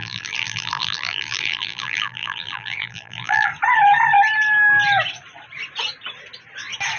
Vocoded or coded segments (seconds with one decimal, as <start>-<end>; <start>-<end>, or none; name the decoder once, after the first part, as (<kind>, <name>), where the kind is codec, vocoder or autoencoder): 0.0-3.5 (vocoder, BigVGAN v2)